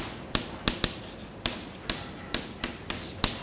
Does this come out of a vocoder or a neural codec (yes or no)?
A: no